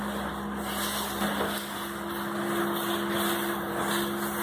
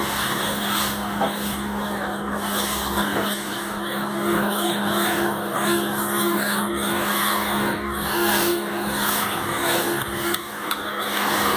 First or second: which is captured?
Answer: first